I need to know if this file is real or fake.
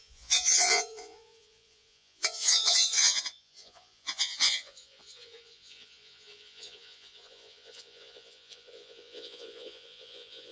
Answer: fake